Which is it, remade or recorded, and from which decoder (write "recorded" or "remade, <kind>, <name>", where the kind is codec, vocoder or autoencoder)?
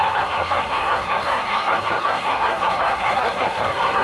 remade, codec, SNAC